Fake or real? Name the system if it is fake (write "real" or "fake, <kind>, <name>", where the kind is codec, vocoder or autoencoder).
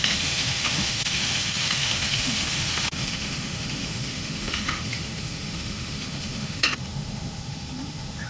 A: fake, autoencoder, DAC-VAE